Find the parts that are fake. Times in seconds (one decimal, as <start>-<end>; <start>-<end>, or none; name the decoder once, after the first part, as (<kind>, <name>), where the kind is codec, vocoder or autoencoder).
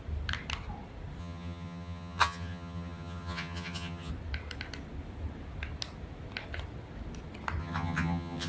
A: 1.2-4.1 (vocoder, HiFi-GAN); 7.6-8.5